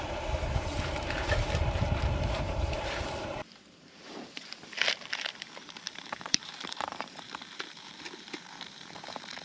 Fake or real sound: fake